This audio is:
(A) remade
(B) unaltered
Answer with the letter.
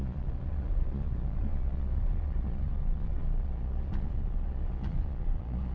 A